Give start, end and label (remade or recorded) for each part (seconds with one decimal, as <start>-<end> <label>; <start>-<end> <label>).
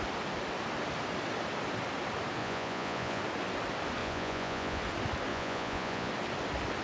0.0-2.4 recorded; 2.4-3.2 remade; 3.2-4.0 recorded; 4.0-4.8 remade; 4.8-5.3 recorded; 5.3-6.1 remade; 6.1-6.8 recorded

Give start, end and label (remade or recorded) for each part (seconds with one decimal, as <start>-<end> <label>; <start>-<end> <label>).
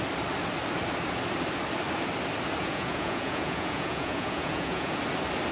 0.0-2.6 recorded; 2.6-5.0 remade; 5.0-5.5 recorded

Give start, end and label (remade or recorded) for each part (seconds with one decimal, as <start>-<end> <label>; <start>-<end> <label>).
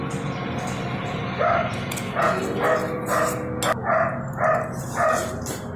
0.0-1.7 recorded; 1.7-2.4 remade; 2.4-5.8 recorded